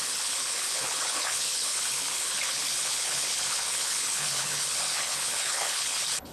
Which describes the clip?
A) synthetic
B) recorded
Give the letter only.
A